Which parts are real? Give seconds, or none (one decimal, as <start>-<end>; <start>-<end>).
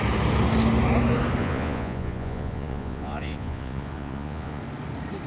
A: 0.0-1.4; 4.6-5.3